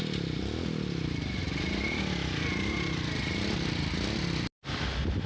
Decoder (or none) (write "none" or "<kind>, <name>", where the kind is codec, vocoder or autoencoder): none